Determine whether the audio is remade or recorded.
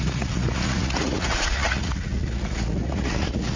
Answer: remade